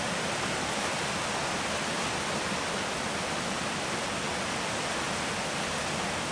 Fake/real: real